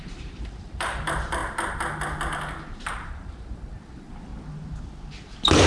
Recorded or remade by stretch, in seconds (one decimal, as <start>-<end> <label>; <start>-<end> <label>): 0.0-1.4 remade; 1.4-2.9 recorded; 2.9-4.3 remade; 4.3-5.7 recorded